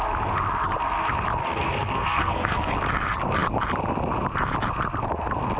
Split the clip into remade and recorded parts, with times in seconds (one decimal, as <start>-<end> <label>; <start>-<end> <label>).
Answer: 0.0-1.4 recorded; 1.4-2.7 remade; 2.7-5.6 recorded

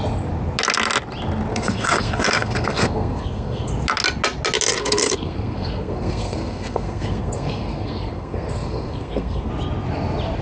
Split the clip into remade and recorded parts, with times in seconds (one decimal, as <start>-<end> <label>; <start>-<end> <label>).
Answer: 0.0-1.5 recorded; 1.5-3.7 remade; 3.7-4.8 recorded; 4.8-9.5 remade; 9.5-10.4 recorded

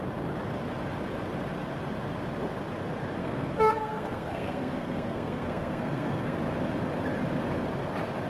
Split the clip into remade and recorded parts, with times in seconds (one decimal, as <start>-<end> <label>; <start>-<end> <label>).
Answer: 0.0-3.2 recorded; 3.2-6.4 remade; 6.4-8.3 recorded

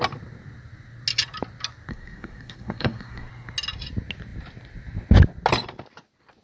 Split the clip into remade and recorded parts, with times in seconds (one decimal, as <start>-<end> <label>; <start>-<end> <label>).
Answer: 0.0-1.9 recorded; 1.9-3.3 remade; 3.3-6.4 recorded

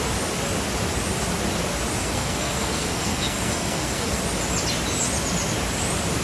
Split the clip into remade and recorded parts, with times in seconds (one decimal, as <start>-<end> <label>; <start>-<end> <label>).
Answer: 0.0-2.0 recorded; 2.0-4.2 remade; 4.2-6.2 recorded

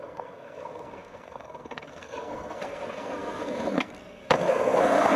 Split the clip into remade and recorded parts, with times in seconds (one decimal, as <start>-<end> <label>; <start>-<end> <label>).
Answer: 0.0-5.2 remade

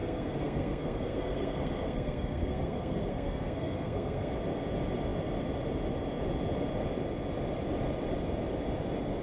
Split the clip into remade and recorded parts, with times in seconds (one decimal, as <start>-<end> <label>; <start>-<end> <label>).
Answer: 0.0-4.3 remade; 4.3-9.2 recorded